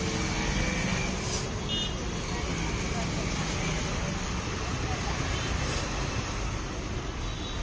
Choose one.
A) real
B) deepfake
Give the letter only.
A